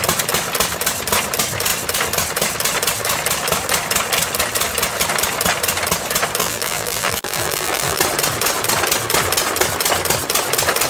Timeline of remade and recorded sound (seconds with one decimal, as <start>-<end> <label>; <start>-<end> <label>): 0.0-6.4 recorded; 6.4-8.0 remade; 8.0-10.9 recorded